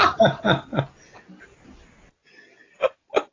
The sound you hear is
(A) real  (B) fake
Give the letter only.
A